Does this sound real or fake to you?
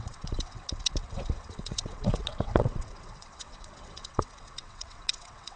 fake